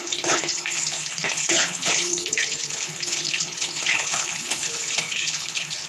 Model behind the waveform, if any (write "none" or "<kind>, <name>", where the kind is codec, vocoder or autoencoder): codec, HILCodec